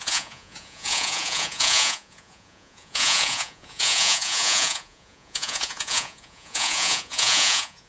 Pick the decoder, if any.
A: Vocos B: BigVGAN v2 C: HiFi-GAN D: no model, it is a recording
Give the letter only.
A